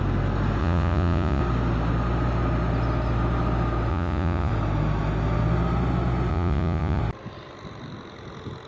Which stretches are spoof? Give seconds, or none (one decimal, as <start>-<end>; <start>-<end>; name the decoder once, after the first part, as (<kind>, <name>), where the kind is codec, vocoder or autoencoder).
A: 0.6-1.4 (vocoder, Vocos); 3.9-4.5; 6.3-7.0